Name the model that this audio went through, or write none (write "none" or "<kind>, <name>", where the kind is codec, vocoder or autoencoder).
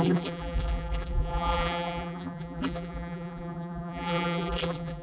vocoder, BigVGAN v2